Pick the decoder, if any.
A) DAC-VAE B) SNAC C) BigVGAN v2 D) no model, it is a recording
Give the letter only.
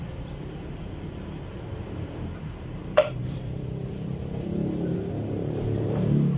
C